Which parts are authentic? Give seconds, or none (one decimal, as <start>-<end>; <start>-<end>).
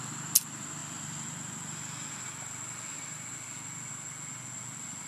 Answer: 0.0-5.1